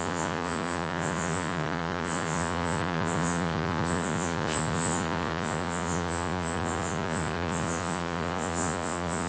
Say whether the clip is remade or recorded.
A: remade